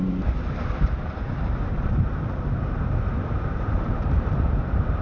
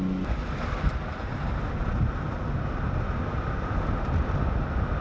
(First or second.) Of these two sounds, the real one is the second